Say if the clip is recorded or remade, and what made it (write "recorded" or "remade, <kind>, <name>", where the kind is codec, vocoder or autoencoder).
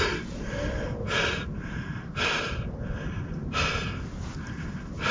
recorded